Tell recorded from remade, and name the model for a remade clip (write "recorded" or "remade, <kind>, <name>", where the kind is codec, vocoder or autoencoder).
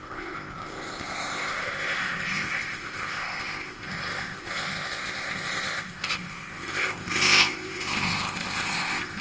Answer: remade, codec, ZipCodec